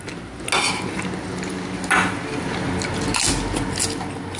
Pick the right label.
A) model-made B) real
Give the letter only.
B